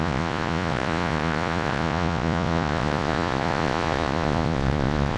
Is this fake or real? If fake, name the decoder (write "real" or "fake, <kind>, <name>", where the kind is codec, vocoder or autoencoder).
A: fake, vocoder, Vocos